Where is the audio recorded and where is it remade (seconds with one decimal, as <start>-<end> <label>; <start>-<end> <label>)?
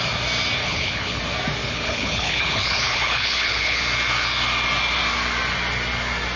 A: 0.0-0.6 recorded; 0.6-1.2 remade; 1.2-1.6 recorded; 1.6-3.8 remade; 3.8-6.4 recorded